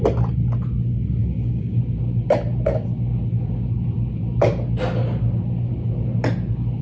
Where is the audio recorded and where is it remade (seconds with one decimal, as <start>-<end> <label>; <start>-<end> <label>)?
0.0-1.2 recorded; 1.2-1.8 remade; 1.8-6.8 recorded